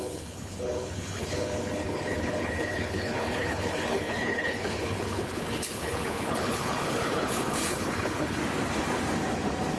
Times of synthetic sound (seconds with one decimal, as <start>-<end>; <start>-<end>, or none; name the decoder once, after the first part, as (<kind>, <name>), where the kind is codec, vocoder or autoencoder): 0.0-8.4 (codec, HILCodec)